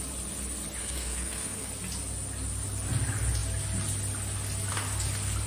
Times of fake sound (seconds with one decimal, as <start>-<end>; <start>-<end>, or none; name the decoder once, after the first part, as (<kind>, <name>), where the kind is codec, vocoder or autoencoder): 0.8-1.7 (codec, SNAC)